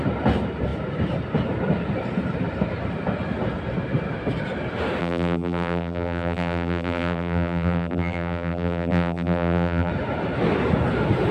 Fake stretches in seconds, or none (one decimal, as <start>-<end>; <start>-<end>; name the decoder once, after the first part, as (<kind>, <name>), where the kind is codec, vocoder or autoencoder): 5.0-9.9 (vocoder, BigVGAN v2)